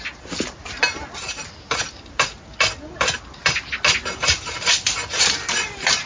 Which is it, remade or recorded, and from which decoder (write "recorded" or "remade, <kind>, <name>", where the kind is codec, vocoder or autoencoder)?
recorded